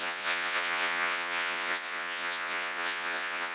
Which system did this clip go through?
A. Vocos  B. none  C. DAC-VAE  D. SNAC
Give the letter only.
A